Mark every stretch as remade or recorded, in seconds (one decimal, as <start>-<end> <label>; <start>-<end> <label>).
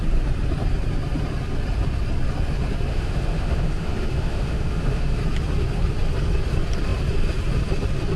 0.0-2.9 recorded; 2.9-5.2 remade; 5.2-8.2 recorded